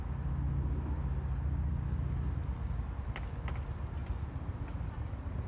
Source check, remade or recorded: recorded